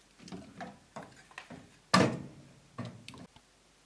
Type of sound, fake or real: real